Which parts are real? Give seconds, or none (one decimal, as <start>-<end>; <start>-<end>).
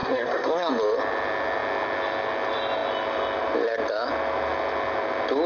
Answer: 0.7-5.5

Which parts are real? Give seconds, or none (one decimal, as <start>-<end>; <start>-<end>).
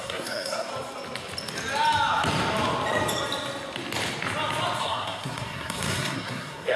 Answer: 0.7-4.8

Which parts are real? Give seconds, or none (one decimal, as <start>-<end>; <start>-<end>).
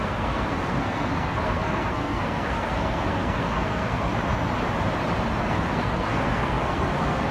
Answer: 4.1-5.4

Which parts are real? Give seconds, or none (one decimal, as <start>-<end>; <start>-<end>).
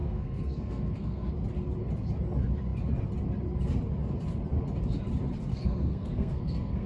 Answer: 1.3-5.5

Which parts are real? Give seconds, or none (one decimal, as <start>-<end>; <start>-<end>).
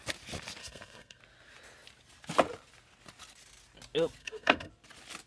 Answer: 0.0-0.6; 1.2-4.2; 4.7-5.3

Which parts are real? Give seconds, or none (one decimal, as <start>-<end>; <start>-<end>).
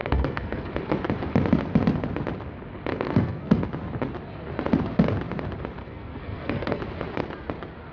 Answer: 0.7-2.9; 3.7-5.8; 6.8-7.9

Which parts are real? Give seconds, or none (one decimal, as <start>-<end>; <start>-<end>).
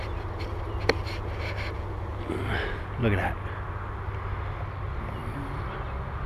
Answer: 0.0-6.3